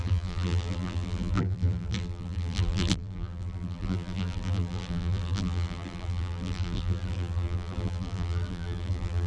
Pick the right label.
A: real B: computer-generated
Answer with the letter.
B